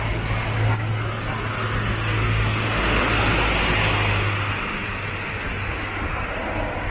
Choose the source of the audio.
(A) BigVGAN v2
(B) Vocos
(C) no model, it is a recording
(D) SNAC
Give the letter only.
C